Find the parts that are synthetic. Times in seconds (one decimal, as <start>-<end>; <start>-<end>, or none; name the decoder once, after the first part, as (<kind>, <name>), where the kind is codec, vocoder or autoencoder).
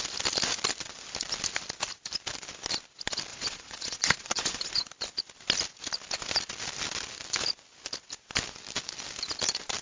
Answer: 3.3-4.9 (vocoder, Vocos)